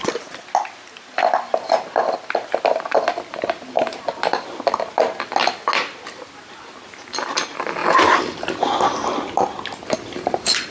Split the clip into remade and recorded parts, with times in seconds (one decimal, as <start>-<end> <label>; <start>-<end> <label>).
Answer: 0.0-10.7 recorded